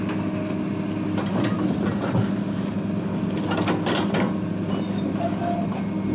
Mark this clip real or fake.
real